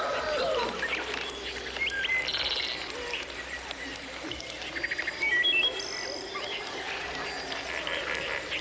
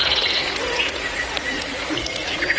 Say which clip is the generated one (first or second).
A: second